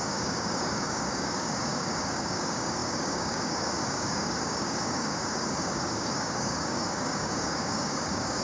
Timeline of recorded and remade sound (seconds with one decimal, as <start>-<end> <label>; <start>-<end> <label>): 0.0-8.4 remade